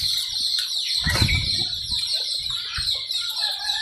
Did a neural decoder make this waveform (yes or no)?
yes